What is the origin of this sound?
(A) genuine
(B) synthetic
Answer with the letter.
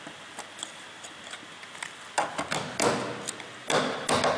A